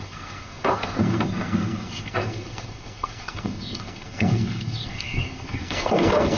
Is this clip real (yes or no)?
no